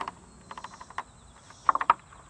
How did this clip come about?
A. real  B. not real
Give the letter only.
A